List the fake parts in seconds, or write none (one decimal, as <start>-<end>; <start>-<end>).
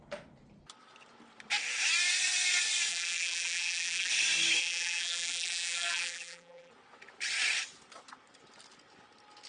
2.9-4.1; 4.6-6.7